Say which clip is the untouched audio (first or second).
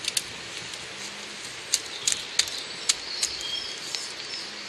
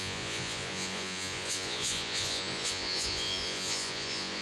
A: first